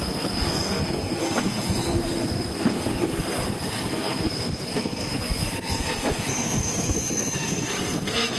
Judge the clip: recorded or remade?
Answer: remade